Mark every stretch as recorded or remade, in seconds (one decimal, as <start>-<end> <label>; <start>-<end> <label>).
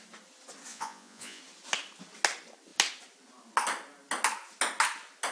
0.0-0.7 recorded; 0.7-1.4 remade; 1.4-5.3 recorded